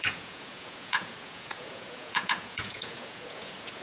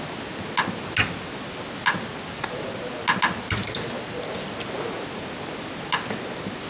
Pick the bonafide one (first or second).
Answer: second